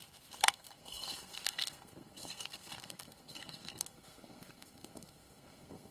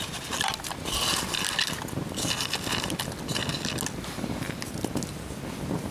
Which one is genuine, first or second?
second